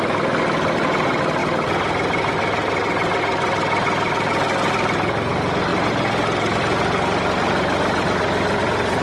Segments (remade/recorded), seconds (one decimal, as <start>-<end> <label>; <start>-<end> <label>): 0.0-9.0 recorded